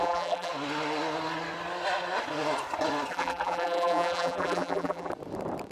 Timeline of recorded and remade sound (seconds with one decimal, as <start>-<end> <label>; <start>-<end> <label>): 0.0-0.5 remade; 0.5-3.1 recorded; 3.1-5.1 remade; 5.1-5.7 recorded